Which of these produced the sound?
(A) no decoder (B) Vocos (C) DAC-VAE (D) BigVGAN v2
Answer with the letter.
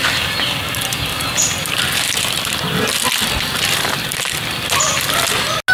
A